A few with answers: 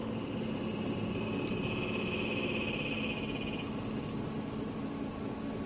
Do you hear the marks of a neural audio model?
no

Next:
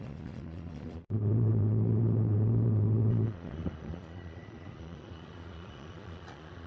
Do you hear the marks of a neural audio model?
yes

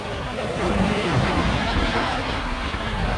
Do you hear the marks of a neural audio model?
yes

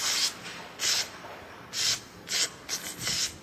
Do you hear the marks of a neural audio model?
no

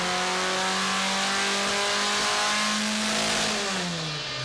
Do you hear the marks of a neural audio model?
no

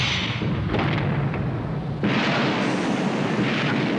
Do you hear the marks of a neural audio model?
no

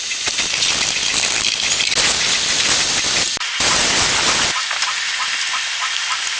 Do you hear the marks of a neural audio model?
no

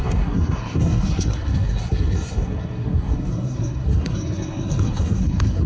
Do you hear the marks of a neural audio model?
yes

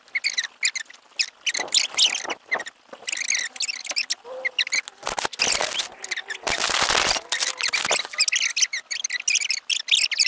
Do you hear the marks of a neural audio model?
no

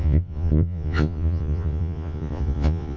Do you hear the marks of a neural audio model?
yes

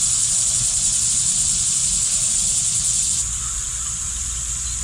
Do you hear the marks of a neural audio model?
yes